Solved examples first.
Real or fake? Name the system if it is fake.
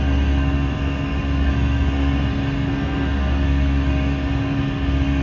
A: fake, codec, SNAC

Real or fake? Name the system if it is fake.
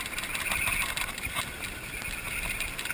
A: real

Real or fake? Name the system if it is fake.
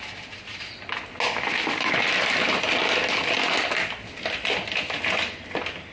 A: real